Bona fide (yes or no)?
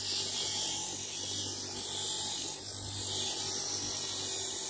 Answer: yes